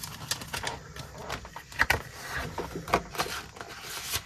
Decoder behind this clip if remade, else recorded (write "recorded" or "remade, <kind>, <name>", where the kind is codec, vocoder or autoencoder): recorded